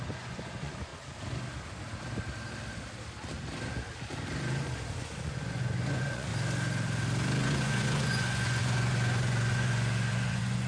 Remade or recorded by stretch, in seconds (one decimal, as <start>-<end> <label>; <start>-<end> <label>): 0.0-0.9 remade; 0.9-5.0 recorded; 5.0-6.3 remade; 6.3-7.4 recorded; 7.4-10.7 remade